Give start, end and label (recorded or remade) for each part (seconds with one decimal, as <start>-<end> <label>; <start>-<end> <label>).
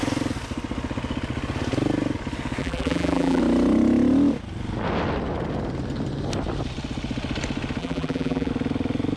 0.0-2.6 recorded; 2.6-3.4 remade; 3.4-7.8 recorded; 7.8-8.5 remade; 8.5-9.2 recorded